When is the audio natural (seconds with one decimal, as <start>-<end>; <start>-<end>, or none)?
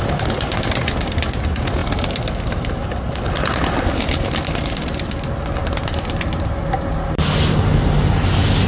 0.0-5.6; 7.6-8.7